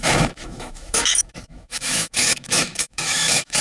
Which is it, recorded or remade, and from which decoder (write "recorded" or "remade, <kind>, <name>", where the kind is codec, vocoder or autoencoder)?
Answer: remade, autoencoder, DAC-VAE